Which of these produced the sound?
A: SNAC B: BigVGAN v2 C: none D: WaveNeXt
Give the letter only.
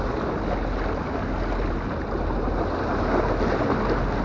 C